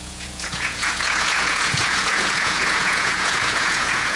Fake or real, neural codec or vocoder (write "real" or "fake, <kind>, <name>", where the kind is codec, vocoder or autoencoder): fake, vocoder, Vocos